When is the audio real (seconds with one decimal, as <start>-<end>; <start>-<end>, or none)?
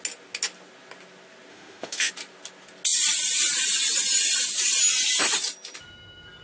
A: 0.0-1.5; 2.1-6.4